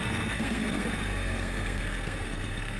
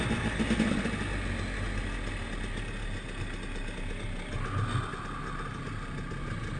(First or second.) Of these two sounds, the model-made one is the first